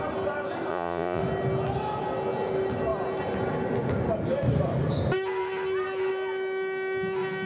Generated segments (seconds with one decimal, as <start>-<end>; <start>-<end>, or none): 0.7-1.2